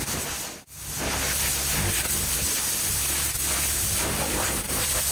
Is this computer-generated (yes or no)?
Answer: no